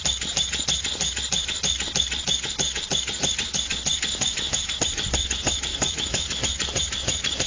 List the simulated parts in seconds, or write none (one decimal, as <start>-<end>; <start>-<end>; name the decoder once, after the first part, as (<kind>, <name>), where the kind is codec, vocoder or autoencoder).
4.1-4.7 (autoencoder, DAC-VAE); 5.7-6.4

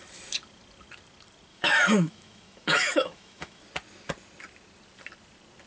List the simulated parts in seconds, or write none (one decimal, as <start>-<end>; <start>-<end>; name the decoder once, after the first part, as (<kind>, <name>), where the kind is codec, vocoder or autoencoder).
1.5-3.6 (autoencoder, DAC-VAE)